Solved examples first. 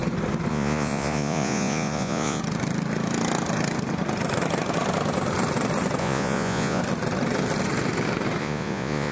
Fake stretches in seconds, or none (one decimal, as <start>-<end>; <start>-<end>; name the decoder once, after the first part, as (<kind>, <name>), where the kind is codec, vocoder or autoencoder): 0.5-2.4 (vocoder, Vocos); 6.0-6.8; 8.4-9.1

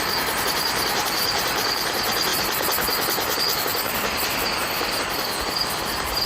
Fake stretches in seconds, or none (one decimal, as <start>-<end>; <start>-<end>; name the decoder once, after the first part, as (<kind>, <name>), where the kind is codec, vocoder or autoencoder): 0.0-2.3 (vocoder, BigVGAN v2)

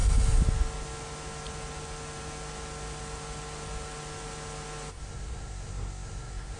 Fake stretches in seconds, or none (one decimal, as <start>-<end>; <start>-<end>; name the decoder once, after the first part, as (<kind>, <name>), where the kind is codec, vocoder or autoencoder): 4.9-6.6 (codec, SNAC)